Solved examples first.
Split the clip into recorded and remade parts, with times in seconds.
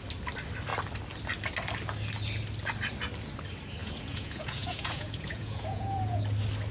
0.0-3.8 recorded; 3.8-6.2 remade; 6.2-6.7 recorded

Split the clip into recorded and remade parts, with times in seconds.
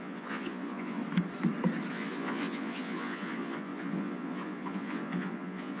0.0-1.0 remade; 1.0-1.9 recorded; 1.9-5.8 remade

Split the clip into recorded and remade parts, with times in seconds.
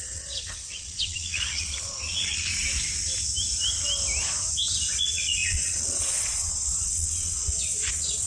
0.0-2.5 remade; 2.5-5.0 recorded; 5.0-8.3 remade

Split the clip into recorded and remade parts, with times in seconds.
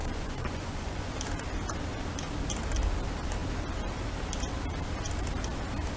0.0-1.1 remade; 1.1-6.0 recorded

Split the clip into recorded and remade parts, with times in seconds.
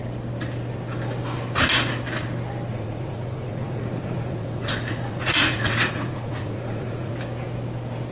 0.0-2.7 recorded; 2.7-7.1 remade; 7.1-8.1 recorded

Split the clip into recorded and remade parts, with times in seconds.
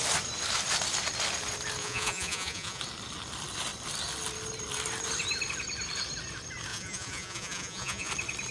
0.0-1.8 recorded; 1.8-2.8 remade; 2.8-6.7 recorded; 6.7-8.1 remade; 8.1-8.5 recorded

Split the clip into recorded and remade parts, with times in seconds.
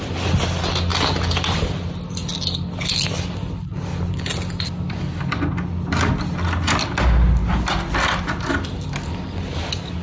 0.0-10.0 recorded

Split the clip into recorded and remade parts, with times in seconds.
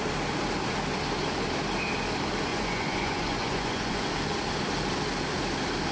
0.0-2.5 recorded; 2.5-4.1 remade; 4.1-5.9 recorded